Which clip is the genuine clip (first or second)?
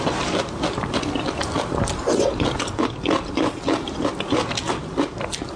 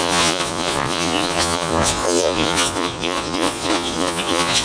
first